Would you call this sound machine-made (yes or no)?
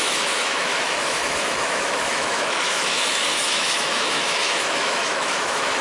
yes